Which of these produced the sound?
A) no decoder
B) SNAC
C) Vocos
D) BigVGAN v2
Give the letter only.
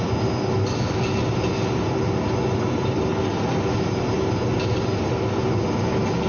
A